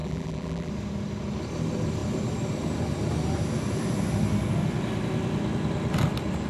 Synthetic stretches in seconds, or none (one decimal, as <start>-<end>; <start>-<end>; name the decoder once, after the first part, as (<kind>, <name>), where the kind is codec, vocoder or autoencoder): 0.0-0.7 (vocoder, BigVGAN v2)